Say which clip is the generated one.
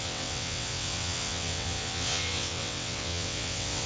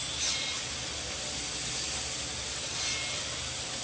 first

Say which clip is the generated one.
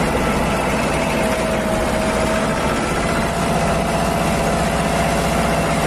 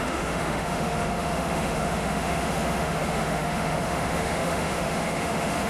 second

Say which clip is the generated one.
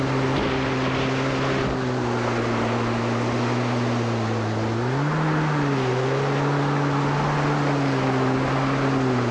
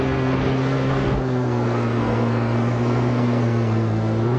second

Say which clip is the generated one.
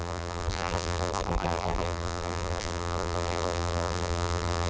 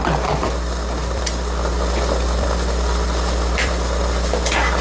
first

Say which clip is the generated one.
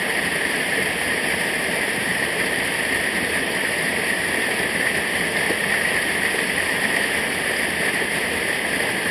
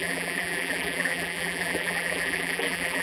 second